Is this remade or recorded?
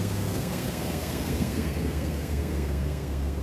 remade